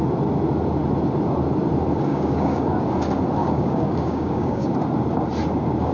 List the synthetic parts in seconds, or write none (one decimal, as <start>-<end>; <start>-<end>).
2.1-2.8; 3.4-4.7